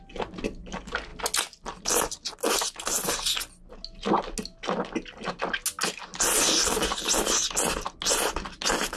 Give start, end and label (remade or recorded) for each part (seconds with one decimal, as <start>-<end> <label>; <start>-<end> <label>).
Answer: 0.0-9.0 recorded